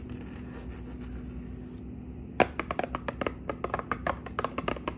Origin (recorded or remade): recorded